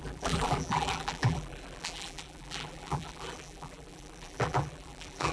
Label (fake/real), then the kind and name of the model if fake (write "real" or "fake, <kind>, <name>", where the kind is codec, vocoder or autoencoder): fake, vocoder, BigVGAN v2